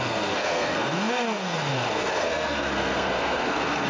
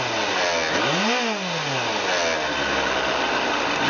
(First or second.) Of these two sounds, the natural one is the second